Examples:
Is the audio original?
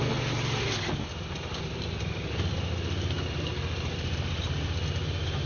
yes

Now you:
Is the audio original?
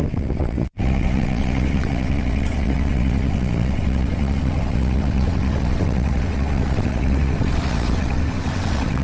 no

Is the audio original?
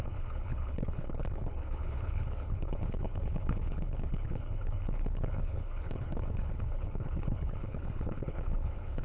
no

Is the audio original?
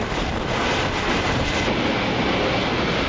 yes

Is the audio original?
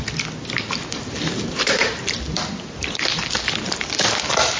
yes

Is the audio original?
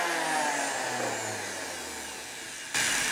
yes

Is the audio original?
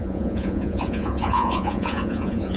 no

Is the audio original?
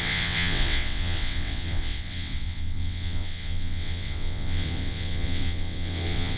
no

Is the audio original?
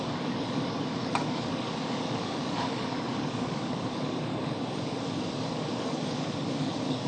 no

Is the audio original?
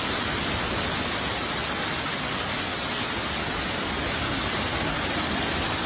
yes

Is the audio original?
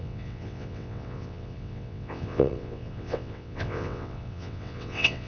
no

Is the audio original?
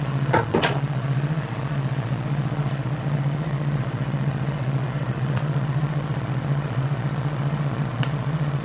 no